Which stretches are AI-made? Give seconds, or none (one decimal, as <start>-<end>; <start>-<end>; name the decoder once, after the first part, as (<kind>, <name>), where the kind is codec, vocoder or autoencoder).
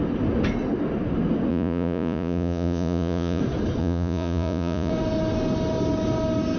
1.5-3.4 (vocoder, Vocos); 3.8-4.9